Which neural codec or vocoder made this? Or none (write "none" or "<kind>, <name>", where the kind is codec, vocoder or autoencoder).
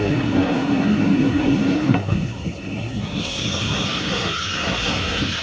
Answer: codec, SNAC